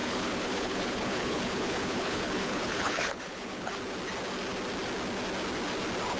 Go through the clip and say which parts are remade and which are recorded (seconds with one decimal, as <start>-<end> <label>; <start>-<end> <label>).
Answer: 0.0-3.7 remade; 3.7-6.2 recorded